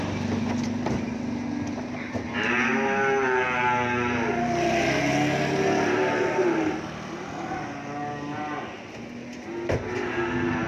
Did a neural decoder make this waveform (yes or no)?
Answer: yes